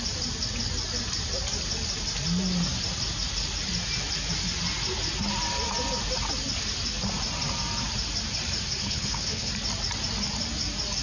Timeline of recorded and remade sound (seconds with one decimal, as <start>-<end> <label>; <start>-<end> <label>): 0.0-8.8 recorded; 8.8-9.5 remade; 9.5-11.0 recorded